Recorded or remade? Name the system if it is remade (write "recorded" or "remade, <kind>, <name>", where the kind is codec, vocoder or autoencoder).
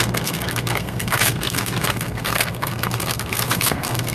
remade, codec, SNAC